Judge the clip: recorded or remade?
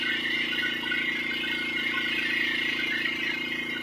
remade